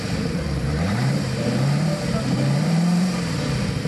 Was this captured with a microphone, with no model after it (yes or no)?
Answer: no